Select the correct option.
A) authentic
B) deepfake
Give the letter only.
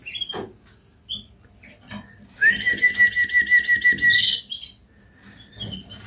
A